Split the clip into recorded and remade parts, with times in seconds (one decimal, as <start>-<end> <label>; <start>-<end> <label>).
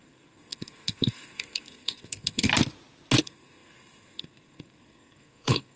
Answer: 0.0-2.5 remade; 2.5-3.2 recorded; 3.2-5.8 remade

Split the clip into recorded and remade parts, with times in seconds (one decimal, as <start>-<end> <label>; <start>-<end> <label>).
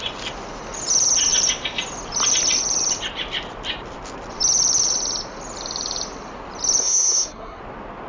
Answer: 0.0-6.8 recorded; 6.8-7.6 remade; 7.6-8.1 recorded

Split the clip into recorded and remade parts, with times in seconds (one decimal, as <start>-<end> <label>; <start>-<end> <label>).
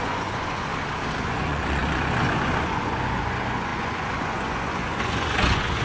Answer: 0.0-0.7 remade; 0.7-1.2 recorded; 1.2-5.8 remade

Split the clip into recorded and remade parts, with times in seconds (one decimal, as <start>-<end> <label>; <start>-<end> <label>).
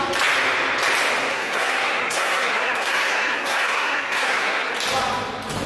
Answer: 0.0-1.3 recorded; 1.3-4.7 remade; 4.7-5.7 recorded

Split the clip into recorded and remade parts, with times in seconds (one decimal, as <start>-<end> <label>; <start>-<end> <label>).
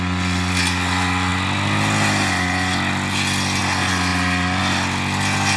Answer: 0.0-5.6 recorded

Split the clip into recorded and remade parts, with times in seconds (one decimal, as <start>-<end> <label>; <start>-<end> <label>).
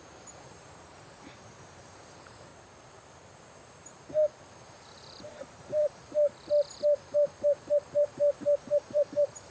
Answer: 0.0-2.5 remade; 2.5-4.4 recorded; 4.4-9.5 remade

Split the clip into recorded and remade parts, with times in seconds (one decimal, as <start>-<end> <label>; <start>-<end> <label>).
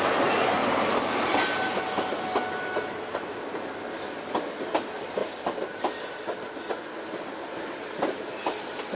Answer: 0.0-8.9 recorded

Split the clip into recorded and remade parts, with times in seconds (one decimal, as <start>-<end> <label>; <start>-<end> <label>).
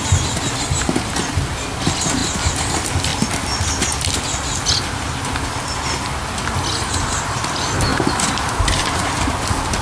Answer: 0.0-7.9 recorded; 7.9-9.1 remade; 9.1-9.8 recorded